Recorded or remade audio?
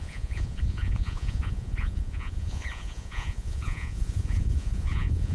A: remade